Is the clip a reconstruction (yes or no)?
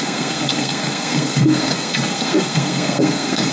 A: yes